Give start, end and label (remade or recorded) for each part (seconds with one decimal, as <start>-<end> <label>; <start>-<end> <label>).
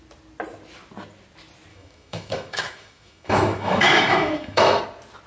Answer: 0.0-1.7 recorded; 1.7-4.8 remade; 4.8-5.3 recorded